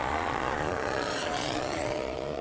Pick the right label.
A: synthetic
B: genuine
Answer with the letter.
A